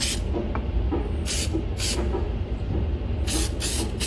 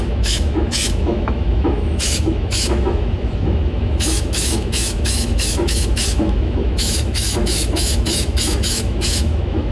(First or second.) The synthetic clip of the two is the second